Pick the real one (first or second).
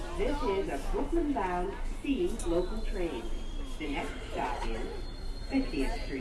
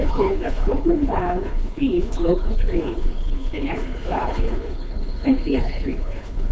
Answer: first